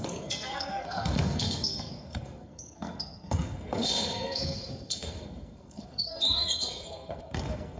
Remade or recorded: remade